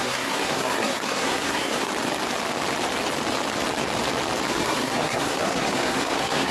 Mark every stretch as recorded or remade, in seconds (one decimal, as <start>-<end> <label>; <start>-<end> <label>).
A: 0.0-1.9 remade; 1.9-4.5 recorded; 4.5-6.5 remade